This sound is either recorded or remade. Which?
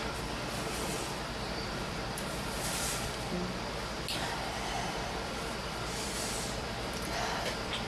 remade